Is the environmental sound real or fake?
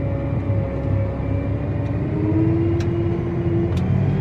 real